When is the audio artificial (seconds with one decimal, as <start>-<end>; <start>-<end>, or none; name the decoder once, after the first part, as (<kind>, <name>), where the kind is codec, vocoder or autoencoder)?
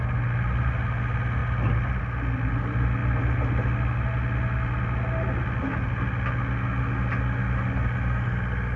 none